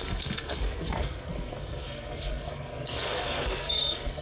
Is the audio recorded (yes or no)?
no